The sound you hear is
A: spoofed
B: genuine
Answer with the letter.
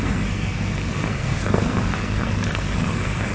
A